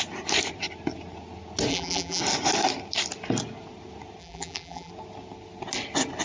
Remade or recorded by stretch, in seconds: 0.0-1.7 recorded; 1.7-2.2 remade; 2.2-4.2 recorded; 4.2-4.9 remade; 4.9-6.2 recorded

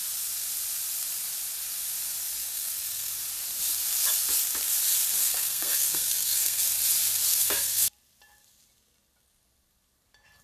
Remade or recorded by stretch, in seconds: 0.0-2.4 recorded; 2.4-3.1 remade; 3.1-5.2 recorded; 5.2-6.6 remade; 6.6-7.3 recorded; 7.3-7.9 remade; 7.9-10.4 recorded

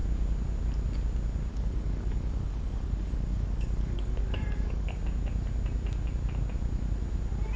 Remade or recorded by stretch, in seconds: 0.0-1.5 recorded; 1.5-5.0 remade; 5.0-7.6 recorded

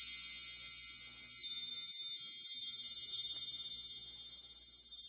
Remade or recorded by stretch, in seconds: 0.0-5.1 recorded

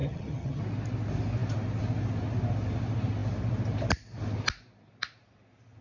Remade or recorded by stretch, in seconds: 0.0-0.6 remade; 0.6-5.8 recorded

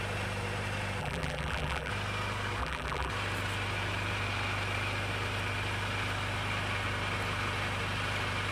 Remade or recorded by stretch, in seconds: 0.0-1.0 recorded; 1.0-1.9 remade; 1.9-2.6 recorded; 2.6-3.1 remade; 3.1-8.5 recorded

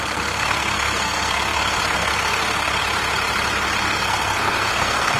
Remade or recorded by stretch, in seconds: 0.0-2.8 remade; 2.8-3.8 recorded; 3.8-5.2 remade

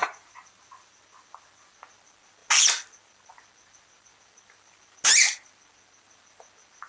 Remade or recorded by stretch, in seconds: 0.0-1.0 remade; 1.0-6.9 recorded